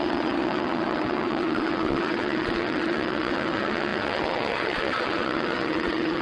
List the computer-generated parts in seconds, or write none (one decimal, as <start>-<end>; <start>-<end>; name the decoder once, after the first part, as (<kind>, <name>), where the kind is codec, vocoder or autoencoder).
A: 0.0-6.2 (vocoder, WaveNeXt)